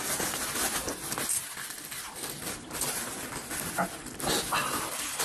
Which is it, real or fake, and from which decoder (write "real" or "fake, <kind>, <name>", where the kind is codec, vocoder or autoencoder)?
real